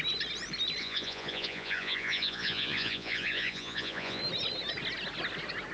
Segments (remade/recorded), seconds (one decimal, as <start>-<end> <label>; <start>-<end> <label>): 0.0-0.8 recorded; 0.8-4.2 remade; 4.2-5.7 recorded

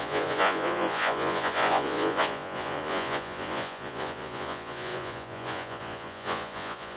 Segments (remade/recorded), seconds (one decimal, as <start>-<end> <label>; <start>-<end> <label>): 0.0-7.0 remade

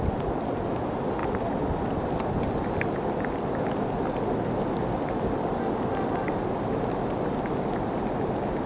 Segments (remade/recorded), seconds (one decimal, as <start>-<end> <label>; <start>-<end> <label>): 0.0-8.7 recorded